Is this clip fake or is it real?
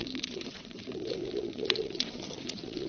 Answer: fake